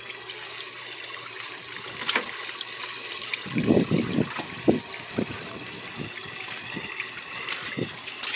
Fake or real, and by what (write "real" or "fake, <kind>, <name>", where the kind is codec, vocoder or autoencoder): real